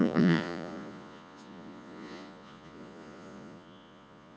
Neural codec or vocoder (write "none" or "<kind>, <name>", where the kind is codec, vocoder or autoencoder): vocoder, Vocos